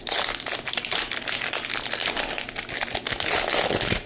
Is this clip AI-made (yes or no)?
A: no